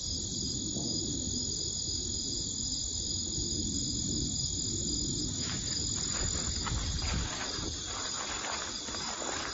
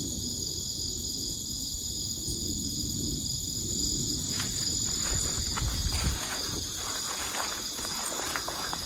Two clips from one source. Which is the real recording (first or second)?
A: first